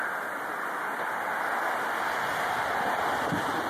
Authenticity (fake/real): real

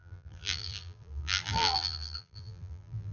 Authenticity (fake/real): fake